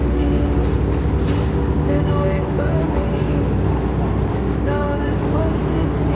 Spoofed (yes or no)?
no